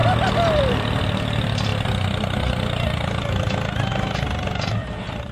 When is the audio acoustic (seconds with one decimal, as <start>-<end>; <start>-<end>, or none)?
0.0-0.6; 1.7-3.9